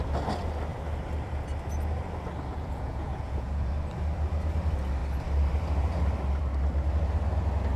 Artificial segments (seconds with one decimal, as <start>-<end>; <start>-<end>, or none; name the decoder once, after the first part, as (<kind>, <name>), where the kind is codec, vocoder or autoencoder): 2.5-3.7 (vocoder, Vocos)

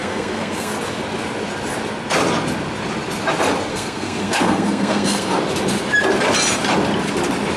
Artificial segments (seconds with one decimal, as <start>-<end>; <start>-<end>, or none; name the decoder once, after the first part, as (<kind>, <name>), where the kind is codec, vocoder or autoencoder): 0.0-0.7 (codec, SNAC); 3.7-5.4

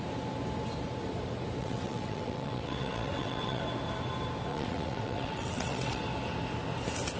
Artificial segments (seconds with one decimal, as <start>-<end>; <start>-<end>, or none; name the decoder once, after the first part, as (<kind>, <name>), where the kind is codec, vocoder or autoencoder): 1.6-3.6 (vocoder, WaveNeXt); 4.5-6.0